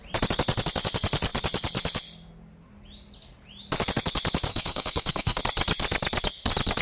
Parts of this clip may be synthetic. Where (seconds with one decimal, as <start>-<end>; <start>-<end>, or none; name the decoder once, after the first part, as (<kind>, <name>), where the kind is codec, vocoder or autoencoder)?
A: 4.5-5.4 (codec, SNAC)